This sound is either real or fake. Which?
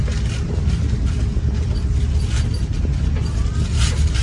real